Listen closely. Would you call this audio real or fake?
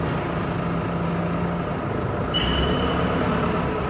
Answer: real